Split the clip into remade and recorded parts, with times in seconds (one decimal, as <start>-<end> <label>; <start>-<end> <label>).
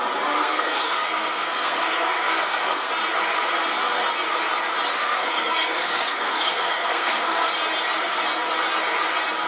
0.0-0.4 recorded; 0.4-2.9 remade; 2.9-4.9 recorded; 4.9-7.5 remade; 7.5-9.5 recorded